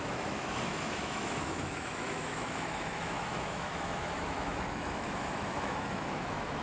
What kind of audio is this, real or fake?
fake